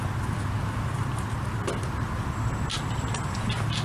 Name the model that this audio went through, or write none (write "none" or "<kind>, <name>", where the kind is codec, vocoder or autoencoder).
none